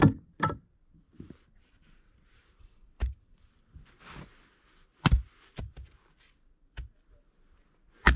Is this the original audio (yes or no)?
yes